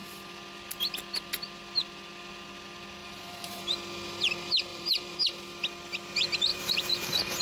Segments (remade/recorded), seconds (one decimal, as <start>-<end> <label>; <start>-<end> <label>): 0.0-3.0 recorded; 3.0-3.6 remade; 3.6-4.7 recorded; 4.7-5.2 remade; 5.2-6.5 recorded; 6.5-7.4 remade